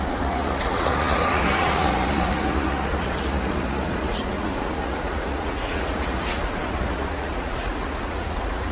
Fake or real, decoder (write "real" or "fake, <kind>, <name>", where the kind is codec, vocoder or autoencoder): fake, vocoder, Vocos